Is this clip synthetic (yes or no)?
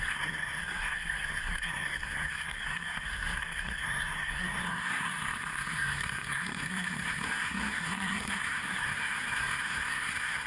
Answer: yes